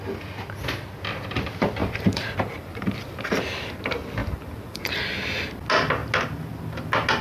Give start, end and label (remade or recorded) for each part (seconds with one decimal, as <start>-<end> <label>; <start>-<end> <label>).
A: 0.0-1.8 recorded; 1.8-3.8 remade; 3.8-4.2 recorded; 4.2-5.1 remade; 5.1-7.2 recorded